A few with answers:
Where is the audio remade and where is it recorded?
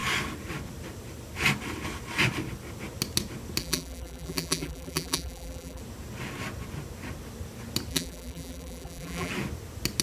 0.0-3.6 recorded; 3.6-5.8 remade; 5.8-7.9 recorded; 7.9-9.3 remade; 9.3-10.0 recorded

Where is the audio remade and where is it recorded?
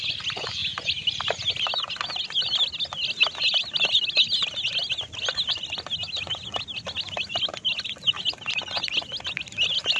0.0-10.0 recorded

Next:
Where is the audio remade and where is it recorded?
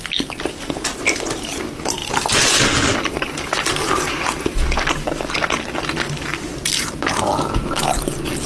0.0-6.5 recorded; 6.5-7.4 remade; 7.4-8.5 recorded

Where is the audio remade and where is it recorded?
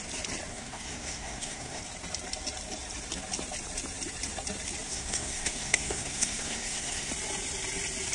0.0-0.5 recorded; 0.5-1.8 remade; 1.8-4.9 recorded; 4.9-7.1 remade; 7.1-8.1 recorded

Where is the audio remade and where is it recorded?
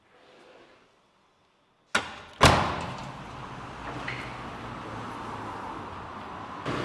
0.0-6.8 recorded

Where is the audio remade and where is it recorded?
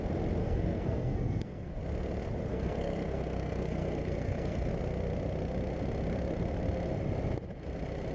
0.0-0.4 recorded; 0.4-1.8 remade; 1.8-2.5 recorded; 2.5-4.7 remade; 4.7-8.1 recorded